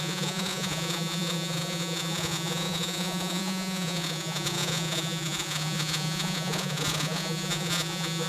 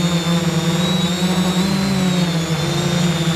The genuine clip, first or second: second